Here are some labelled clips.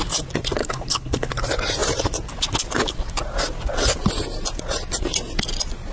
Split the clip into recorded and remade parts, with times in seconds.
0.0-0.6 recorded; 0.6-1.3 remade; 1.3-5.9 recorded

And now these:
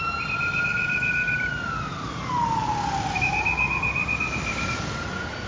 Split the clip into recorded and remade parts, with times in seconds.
0.0-5.5 recorded

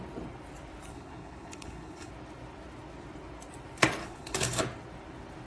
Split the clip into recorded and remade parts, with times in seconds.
0.0-0.9 recorded; 0.9-2.1 remade; 2.1-4.0 recorded; 4.0-4.6 remade; 4.6-5.5 recorded

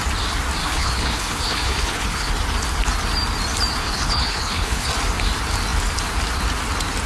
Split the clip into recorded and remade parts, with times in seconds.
0.0-0.6 recorded; 0.6-2.3 remade; 2.3-3.8 recorded; 3.8-4.9 remade; 4.9-7.1 recorded

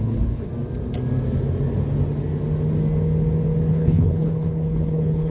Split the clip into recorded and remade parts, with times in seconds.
0.0-0.5 remade; 0.5-3.7 recorded; 3.7-5.3 remade